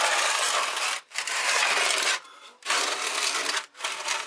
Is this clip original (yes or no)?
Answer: yes